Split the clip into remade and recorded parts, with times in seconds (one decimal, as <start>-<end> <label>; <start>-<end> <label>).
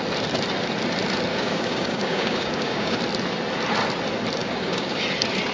0.0-1.3 recorded; 1.3-3.0 remade; 3.0-4.4 recorded; 4.4-5.0 remade; 5.0-5.5 recorded